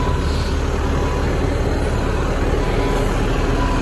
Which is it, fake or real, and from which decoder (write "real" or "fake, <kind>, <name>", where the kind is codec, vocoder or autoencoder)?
real